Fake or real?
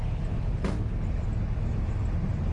real